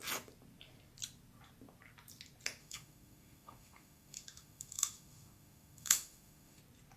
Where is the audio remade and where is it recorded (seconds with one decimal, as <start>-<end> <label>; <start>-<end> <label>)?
0.0-2.6 recorded; 2.6-6.6 remade; 6.6-7.0 recorded